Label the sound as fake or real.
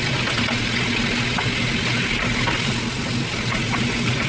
real